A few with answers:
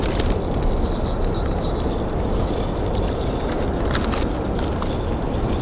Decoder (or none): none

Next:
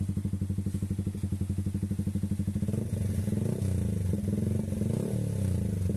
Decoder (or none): none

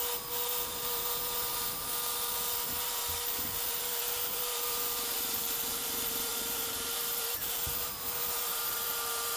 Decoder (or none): vocoder, BigVGAN v2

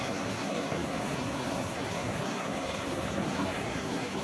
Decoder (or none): codec, SNAC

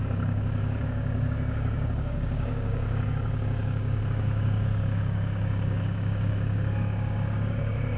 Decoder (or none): codec, DAC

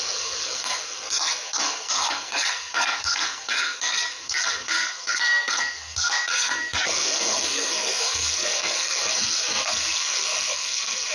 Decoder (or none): codec, SNAC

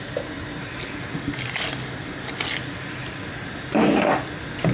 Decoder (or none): none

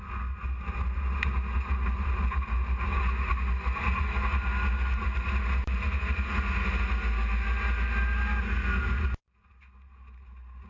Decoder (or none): none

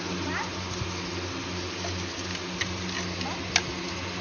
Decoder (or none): none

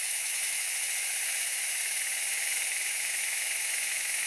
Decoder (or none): autoencoder, DAC-VAE